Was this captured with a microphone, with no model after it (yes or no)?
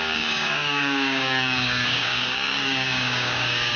no